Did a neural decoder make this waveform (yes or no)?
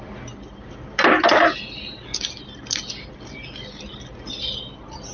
no